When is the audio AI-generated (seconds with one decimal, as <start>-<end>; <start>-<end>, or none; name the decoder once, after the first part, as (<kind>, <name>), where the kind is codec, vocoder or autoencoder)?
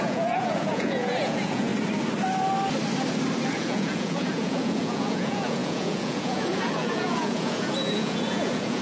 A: 0.0-1.7 (vocoder, Vocos); 3.5-8.8